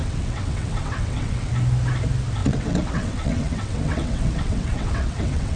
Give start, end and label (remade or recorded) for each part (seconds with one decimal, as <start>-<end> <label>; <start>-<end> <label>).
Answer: 0.0-1.5 remade; 1.5-2.4 recorded; 2.4-5.6 remade